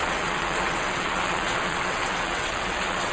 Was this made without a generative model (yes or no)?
no